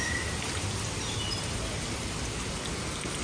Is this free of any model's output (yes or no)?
yes